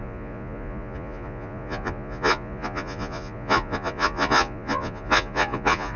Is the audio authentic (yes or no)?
no